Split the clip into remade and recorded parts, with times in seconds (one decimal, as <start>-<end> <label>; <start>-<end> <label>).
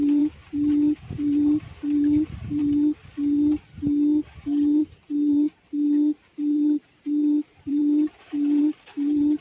0.0-2.6 remade; 2.6-4.8 recorded; 4.8-9.4 remade